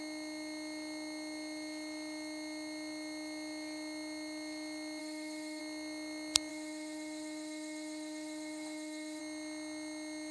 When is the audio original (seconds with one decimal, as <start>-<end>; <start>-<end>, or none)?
0.0-5.0; 5.6-6.5; 9.2-10.3